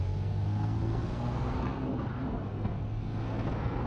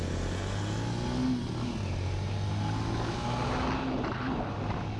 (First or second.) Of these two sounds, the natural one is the second